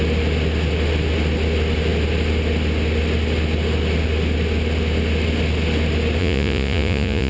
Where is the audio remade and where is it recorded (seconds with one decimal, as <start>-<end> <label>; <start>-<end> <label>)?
0.0-6.2 recorded; 6.2-7.3 remade